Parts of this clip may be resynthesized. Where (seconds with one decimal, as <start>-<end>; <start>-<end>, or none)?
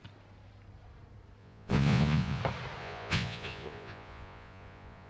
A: 1.4-2.4; 2.8-5.1